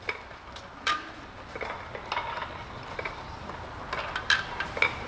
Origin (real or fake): real